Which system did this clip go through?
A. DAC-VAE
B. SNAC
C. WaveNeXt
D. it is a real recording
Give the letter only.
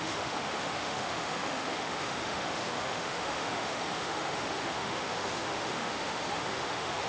A